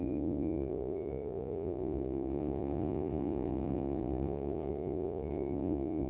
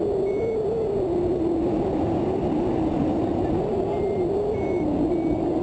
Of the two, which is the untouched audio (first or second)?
second